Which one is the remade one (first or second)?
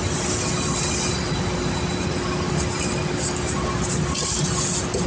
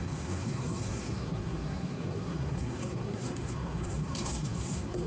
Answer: second